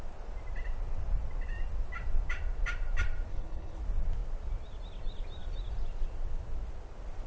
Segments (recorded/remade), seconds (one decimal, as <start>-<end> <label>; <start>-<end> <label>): 0.0-3.3 recorded; 3.3-3.8 remade; 3.8-7.3 recorded